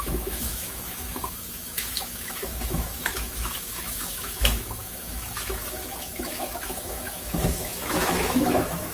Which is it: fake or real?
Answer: fake